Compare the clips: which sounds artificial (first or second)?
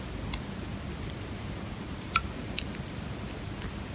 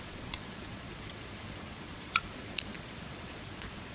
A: second